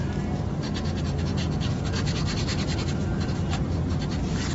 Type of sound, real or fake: real